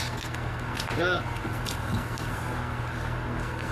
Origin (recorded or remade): remade